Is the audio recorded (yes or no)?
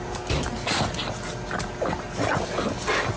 yes